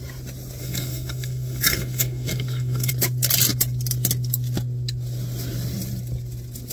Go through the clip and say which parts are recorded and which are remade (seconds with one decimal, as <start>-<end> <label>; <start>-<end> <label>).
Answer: 0.0-0.6 recorded; 0.6-2.9 remade; 2.9-6.7 recorded